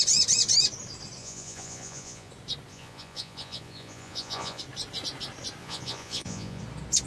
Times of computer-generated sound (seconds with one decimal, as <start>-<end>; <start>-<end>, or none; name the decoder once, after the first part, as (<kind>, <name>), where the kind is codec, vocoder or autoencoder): 1.2-2.3 (vocoder, Vocos); 2.7-4.6; 5.6-6.6